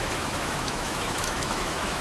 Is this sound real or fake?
fake